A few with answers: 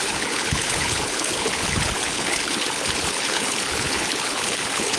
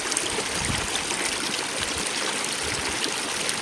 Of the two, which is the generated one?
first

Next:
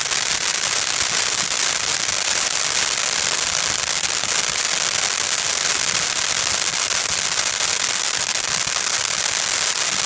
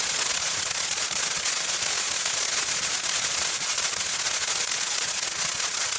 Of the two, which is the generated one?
second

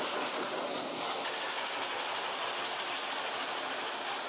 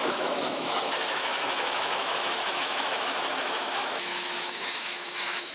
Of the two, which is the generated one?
second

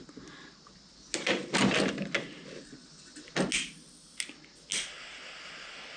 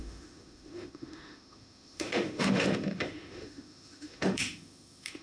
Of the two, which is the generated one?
second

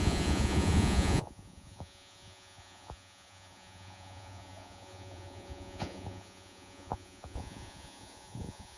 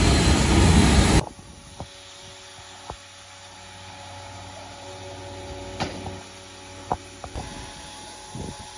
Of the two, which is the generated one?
first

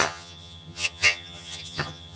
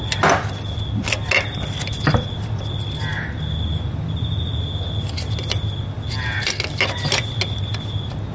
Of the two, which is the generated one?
first